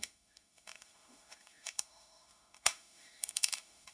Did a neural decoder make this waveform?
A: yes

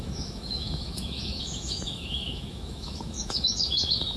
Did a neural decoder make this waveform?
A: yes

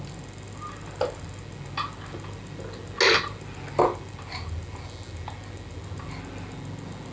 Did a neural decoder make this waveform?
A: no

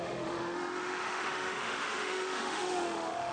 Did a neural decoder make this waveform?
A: yes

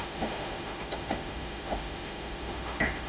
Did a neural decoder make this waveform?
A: yes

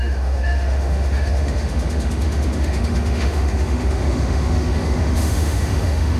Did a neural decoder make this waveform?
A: yes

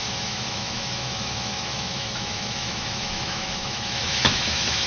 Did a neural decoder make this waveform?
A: yes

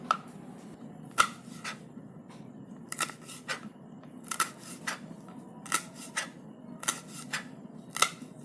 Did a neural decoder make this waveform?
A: no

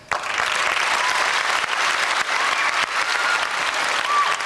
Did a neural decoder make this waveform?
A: no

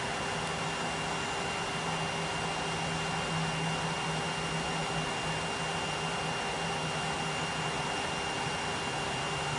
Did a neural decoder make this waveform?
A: no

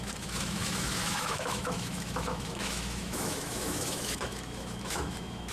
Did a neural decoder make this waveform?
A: yes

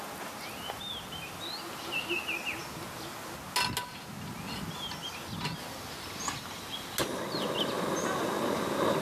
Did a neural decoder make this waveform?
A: no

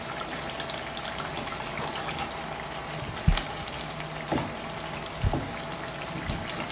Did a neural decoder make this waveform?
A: no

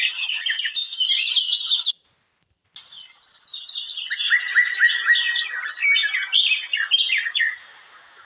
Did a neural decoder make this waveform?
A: no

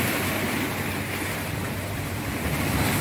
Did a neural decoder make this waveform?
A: no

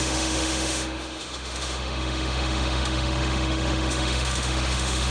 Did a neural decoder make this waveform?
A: yes